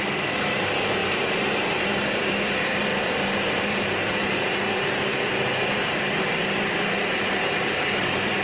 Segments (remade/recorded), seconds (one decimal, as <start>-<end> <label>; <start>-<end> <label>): 0.0-8.4 remade